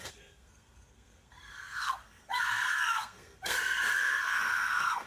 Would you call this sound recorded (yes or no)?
no